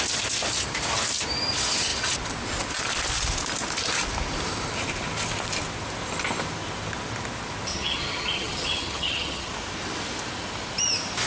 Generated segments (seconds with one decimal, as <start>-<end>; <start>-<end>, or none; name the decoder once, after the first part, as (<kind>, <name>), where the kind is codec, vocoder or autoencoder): 7.7-9.5 (vocoder, HiFi-GAN)